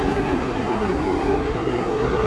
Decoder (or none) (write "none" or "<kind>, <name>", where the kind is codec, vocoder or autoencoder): codec, SNAC